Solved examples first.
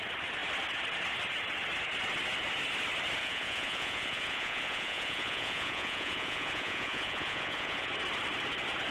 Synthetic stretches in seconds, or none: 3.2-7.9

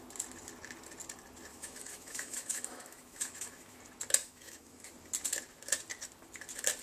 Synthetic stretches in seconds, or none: 1.5-3.8; 4.2-4.9